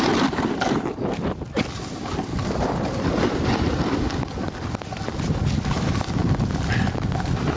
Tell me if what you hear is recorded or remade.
recorded